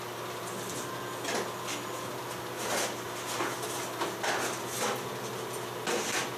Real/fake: real